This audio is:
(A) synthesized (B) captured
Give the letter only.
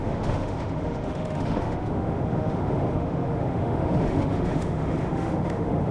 A